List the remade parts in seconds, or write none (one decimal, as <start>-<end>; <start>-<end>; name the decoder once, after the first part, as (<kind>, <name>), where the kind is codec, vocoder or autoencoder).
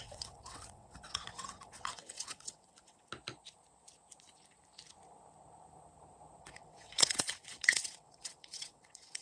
0.0-3.1 (vocoder, WaveNeXt); 6.4-9.2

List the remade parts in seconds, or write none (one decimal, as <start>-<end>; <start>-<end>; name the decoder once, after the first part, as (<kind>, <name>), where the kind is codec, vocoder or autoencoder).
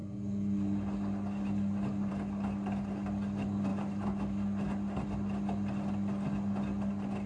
none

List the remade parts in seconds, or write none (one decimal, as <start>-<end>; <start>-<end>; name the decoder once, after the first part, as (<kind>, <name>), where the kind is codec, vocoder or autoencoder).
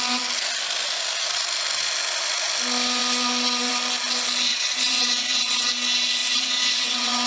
4.5-5.7 (vocoder, WaveNeXt); 6.2-7.3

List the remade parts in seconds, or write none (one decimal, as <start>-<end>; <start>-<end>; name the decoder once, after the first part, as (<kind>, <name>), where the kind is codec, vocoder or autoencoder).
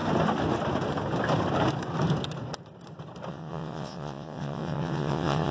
3.3-5.5 (vocoder, WaveNeXt)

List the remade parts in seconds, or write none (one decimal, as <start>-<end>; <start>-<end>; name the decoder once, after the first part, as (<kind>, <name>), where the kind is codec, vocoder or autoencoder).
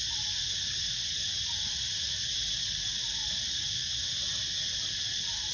none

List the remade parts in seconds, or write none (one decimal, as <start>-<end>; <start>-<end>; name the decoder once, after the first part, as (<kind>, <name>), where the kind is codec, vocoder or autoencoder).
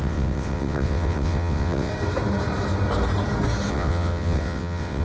0.0-1.9 (vocoder, WaveNeXt); 3.7-5.0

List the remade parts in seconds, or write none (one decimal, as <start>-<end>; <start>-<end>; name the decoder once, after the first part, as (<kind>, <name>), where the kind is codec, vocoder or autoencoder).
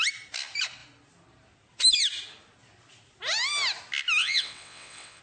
4.2-5.2 (vocoder, WaveNeXt)